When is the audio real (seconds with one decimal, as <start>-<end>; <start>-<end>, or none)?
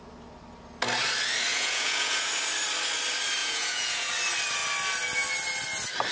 0.0-1.5; 2.3-3.4; 4.1-6.1